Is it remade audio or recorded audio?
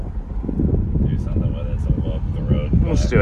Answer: recorded